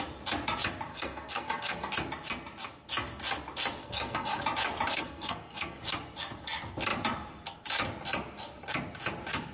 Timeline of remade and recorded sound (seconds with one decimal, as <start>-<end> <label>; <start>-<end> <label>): 0.0-0.9 recorded; 0.9-1.9 remade; 1.9-3.8 recorded; 3.8-4.4 remade; 4.4-4.9 recorded; 4.9-5.8 remade; 5.8-9.5 recorded